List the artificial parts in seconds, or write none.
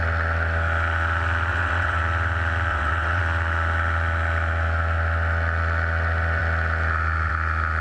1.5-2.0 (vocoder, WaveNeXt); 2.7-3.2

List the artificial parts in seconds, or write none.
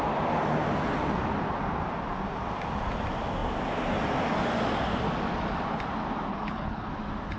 6.3-6.9 (codec, HILCodec)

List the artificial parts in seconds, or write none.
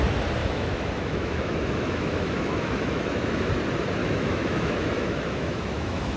0.4-3.5 (autoencoder, DAC-VAE); 4.0-6.2